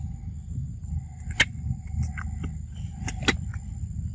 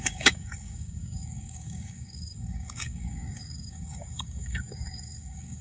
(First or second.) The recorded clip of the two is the first